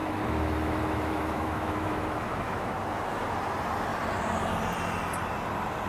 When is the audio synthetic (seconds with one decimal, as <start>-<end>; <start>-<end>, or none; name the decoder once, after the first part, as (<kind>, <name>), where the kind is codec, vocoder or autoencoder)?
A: 0.0-2.7 (autoencoder, DAC-VAE)